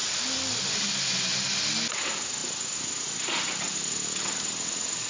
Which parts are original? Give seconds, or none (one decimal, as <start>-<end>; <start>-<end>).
0.0-5.1